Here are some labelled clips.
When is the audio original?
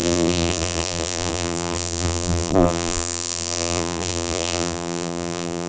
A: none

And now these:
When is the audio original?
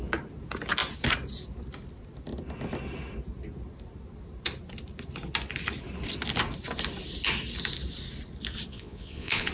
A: 0.0-8.7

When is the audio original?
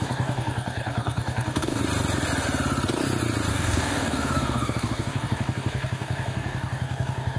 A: 1.8-3.5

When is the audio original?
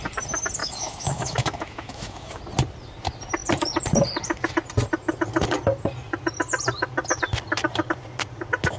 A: 0.0-0.6; 2.4-8.8